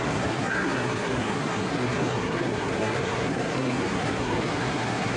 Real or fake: fake